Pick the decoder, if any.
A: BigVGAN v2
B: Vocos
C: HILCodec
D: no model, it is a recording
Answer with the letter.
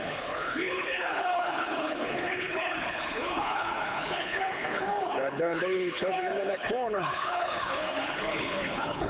C